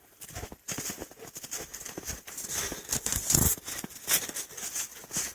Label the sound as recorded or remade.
recorded